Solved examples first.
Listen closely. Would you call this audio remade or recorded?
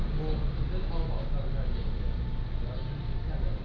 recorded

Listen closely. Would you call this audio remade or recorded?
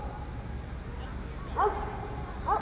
recorded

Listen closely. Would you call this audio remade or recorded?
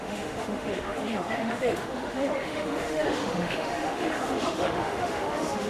remade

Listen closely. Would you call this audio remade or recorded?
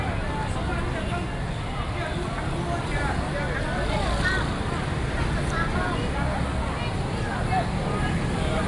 recorded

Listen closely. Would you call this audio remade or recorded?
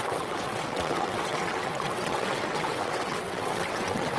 remade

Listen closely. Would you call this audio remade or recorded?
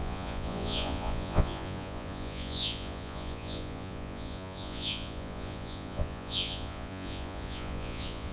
remade